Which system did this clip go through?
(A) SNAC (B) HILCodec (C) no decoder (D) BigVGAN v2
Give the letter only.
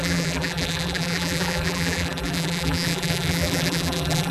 D